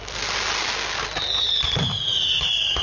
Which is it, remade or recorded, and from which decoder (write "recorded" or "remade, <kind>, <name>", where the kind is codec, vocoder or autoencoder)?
recorded